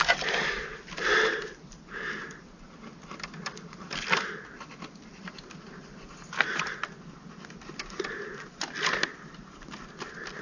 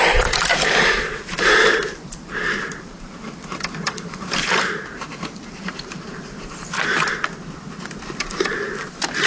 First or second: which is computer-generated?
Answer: second